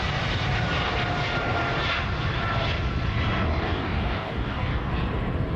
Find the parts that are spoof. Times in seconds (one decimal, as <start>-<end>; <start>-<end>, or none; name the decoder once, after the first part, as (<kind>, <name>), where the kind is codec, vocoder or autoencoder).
3.5-4.9 (codec, DAC)